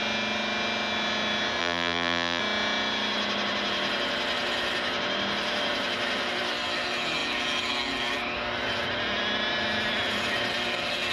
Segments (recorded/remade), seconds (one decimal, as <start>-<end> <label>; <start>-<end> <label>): 0.0-1.6 recorded; 1.6-2.4 remade; 2.4-11.1 recorded